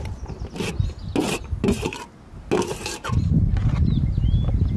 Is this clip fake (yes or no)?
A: no